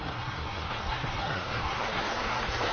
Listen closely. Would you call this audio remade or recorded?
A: remade